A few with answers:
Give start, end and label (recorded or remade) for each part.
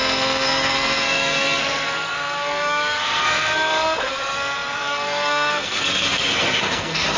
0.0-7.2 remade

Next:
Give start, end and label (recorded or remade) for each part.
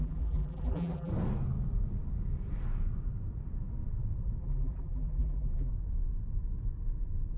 0.0-1.1 remade; 1.1-4.4 recorded; 4.4-5.7 remade; 5.7-7.4 recorded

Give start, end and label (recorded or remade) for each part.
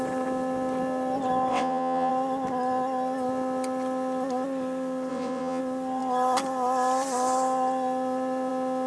0.0-1.5 recorded; 1.5-2.1 remade; 2.1-5.1 recorded; 5.1-5.6 remade; 5.6-8.9 recorded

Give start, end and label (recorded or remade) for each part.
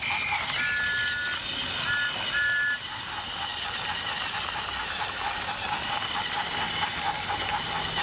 0.0-8.0 recorded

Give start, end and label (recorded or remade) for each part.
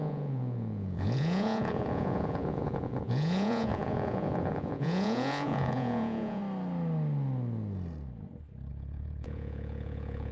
0.0-6.4 remade; 6.4-8.7 recorded; 8.7-10.3 remade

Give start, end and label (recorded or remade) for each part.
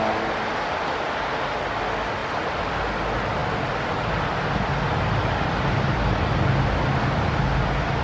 0.0-8.0 recorded